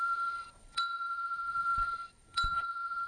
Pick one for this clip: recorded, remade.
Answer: remade